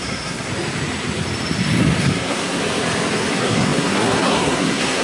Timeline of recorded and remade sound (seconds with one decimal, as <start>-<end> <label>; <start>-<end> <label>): 0.0-0.5 remade; 0.5-2.0 recorded; 2.0-2.6 remade; 2.6-3.3 recorded; 3.3-5.0 remade